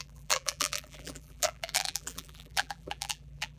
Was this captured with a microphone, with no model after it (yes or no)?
no